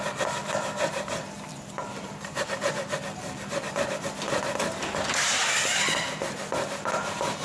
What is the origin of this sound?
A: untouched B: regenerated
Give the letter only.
B